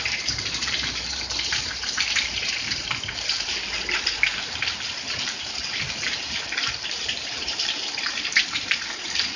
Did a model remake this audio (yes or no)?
yes